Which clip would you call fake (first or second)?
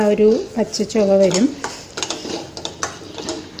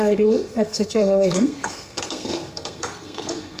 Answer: second